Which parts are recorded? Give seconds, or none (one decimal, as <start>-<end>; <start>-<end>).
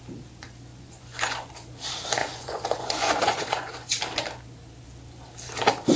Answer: 0.0-0.7; 1.5-2.2; 4.0-6.0